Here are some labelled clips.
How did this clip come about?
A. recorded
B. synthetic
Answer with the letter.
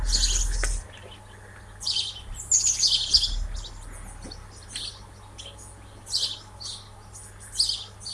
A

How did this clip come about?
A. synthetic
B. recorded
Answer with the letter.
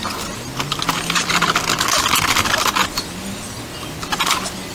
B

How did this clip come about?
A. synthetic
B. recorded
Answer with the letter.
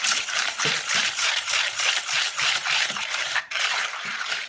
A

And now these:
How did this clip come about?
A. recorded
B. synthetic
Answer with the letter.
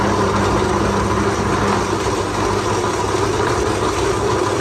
A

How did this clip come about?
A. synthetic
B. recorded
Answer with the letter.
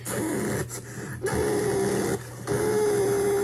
B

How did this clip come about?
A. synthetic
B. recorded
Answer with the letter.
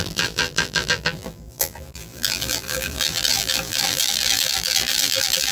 A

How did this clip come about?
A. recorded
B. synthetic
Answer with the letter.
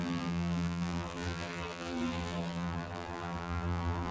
B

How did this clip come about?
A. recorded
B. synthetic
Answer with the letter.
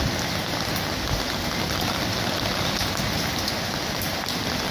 A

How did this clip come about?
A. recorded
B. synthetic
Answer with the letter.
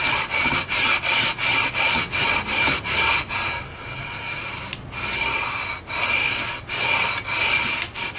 A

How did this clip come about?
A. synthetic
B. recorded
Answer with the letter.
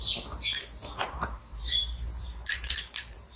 A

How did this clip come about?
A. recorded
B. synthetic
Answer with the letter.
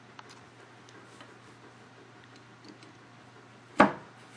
A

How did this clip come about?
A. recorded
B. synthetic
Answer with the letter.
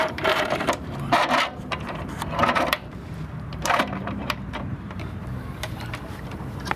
B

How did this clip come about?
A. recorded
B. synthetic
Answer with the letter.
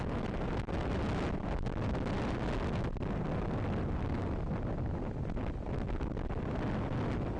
A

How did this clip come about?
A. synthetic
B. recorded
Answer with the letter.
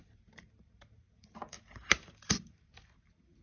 A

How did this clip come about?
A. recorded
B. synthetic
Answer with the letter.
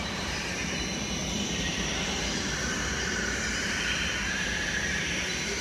B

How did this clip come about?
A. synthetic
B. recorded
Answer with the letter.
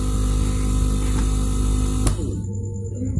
B